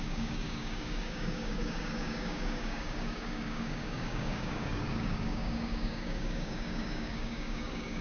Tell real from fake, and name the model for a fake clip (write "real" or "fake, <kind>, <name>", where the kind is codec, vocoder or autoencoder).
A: fake, codec, DAC